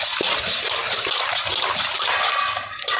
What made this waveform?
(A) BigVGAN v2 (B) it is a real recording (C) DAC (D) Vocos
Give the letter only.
B